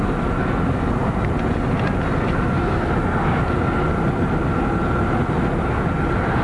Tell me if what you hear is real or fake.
real